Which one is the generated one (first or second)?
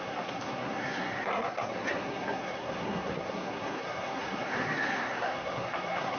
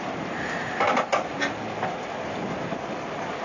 first